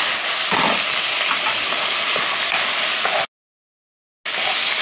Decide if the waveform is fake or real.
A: real